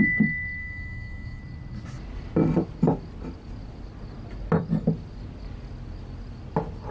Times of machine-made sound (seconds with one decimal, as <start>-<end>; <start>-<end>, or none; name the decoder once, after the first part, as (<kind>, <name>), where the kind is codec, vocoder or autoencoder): 0.6-1.4 (autoencoder, DAC-VAE)